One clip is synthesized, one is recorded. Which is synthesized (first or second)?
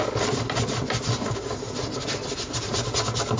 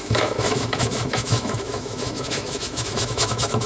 second